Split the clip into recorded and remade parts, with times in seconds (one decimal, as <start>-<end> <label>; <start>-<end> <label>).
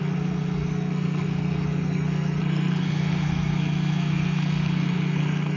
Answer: 0.0-5.6 remade